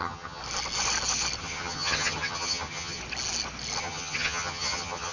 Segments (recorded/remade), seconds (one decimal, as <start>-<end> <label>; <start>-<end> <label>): 0.0-0.4 remade; 0.4-1.4 recorded; 1.4-3.0 remade; 3.0-3.8 recorded; 3.8-5.1 remade